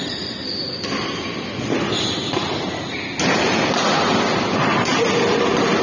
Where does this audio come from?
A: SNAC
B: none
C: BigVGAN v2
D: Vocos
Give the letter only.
B